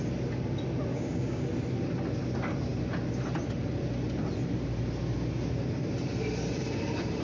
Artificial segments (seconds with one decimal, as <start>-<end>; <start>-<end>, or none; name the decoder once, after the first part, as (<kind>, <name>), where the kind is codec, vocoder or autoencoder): 0.9-1.4 (codec, DAC)